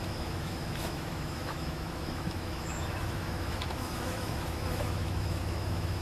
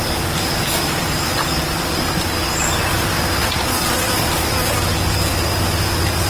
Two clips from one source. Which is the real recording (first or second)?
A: second